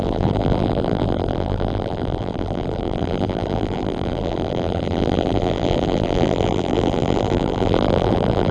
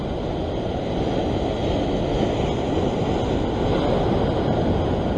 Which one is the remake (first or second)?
first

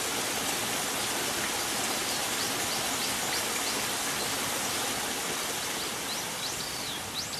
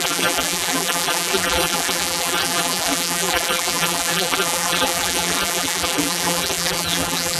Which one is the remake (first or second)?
second